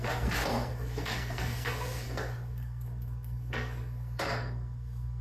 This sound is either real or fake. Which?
fake